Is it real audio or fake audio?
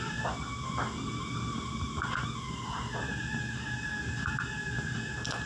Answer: real